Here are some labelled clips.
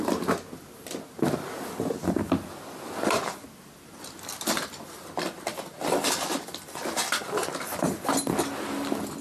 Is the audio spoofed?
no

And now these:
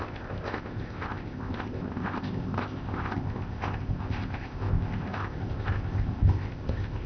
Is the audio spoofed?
yes